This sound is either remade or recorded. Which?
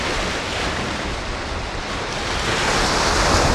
recorded